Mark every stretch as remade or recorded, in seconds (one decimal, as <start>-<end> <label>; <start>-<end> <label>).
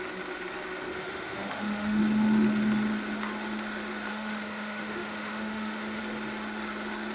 0.0-0.9 recorded; 0.9-2.0 remade; 2.0-4.1 recorded; 4.1-6.0 remade; 6.0-7.1 recorded